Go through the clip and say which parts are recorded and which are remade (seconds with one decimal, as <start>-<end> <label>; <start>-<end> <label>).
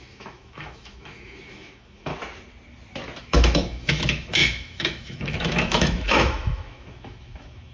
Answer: 0.0-2.1 remade; 2.1-3.2 recorded; 3.2-7.7 remade